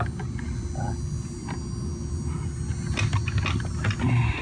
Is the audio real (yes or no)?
yes